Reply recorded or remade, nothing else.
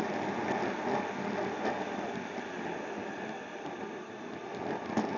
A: recorded